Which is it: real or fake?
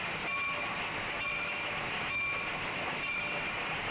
real